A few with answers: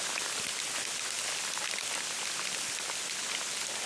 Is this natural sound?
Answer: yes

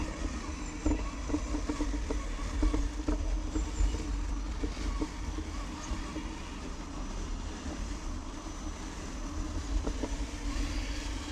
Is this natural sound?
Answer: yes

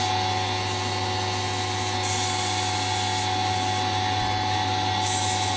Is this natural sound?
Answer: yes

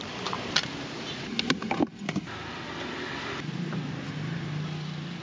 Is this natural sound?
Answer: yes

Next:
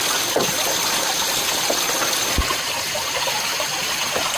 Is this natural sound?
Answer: yes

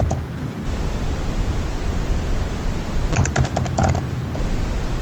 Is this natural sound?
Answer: yes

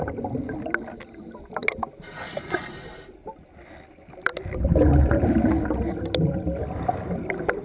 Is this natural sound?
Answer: yes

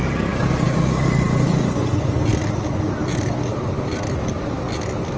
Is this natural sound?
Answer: yes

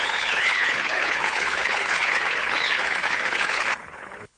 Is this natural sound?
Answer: no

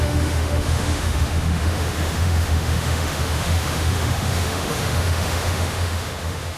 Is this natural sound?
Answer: no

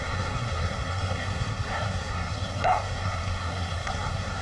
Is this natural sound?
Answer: no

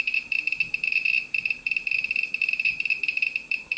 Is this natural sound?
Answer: no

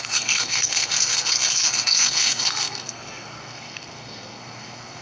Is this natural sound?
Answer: no